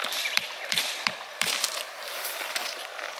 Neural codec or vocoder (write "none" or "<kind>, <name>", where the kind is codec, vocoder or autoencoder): vocoder, BigVGAN v2